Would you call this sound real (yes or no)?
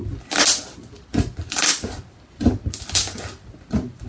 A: yes